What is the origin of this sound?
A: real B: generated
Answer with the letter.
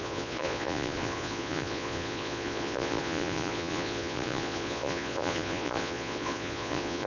B